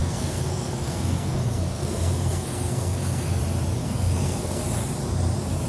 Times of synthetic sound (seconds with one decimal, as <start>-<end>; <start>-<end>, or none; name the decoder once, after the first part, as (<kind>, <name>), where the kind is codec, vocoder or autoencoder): 0.0-3.4 (codec, SNAC); 3.8-4.6